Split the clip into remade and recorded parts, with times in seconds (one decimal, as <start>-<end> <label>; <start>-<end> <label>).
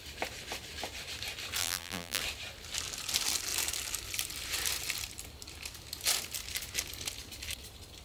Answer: 0.0-1.6 recorded; 1.6-2.2 remade; 2.2-8.0 recorded